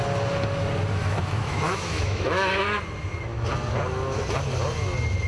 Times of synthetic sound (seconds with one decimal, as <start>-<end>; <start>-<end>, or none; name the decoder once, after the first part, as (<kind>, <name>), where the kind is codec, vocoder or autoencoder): 1.0-2.6 (autoencoder, DAC-VAE)